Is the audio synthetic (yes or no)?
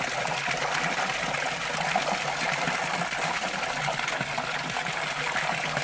no